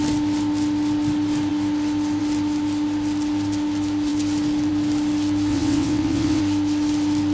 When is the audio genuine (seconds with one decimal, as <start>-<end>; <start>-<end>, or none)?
0.0-5.5; 6.4-7.3